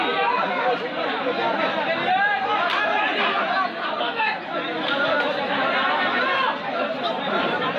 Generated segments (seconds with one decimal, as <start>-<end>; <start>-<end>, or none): 0.0-2.5; 5.7-7.8